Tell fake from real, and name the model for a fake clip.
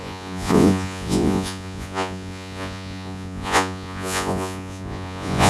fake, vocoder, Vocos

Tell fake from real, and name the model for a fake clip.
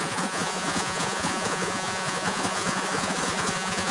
fake, vocoder, Vocos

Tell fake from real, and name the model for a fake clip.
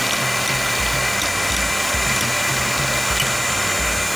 real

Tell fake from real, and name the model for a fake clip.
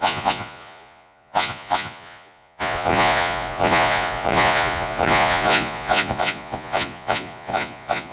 fake, vocoder, Vocos